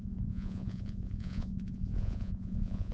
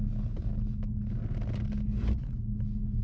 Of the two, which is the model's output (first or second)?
first